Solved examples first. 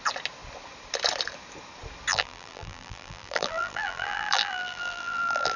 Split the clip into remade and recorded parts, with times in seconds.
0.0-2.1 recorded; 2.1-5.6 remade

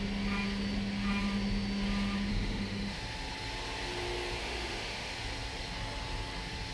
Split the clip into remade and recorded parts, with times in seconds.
0.0-2.3 recorded; 2.3-3.0 remade; 3.0-4.4 recorded; 4.4-5.1 remade; 5.1-6.7 recorded

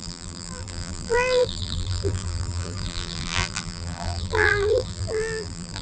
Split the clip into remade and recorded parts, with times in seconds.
0.0-5.8 remade

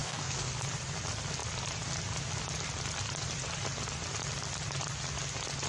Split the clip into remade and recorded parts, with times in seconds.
0.0-0.5 remade; 0.5-5.7 recorded

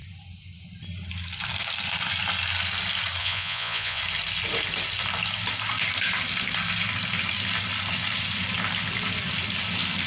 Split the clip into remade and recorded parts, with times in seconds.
0.0-3.2 recorded; 3.2-4.0 remade; 4.0-10.1 recorded

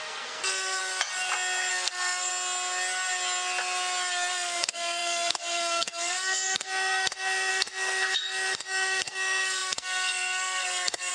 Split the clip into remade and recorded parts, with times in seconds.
0.0-0.8 remade; 0.8-1.7 recorded; 1.7-2.3 remade; 2.3-4.3 recorded; 4.3-11.1 remade